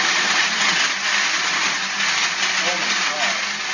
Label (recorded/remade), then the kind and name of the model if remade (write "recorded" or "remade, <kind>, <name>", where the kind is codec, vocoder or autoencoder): recorded